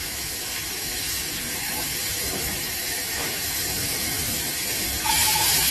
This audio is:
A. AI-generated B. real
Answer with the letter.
A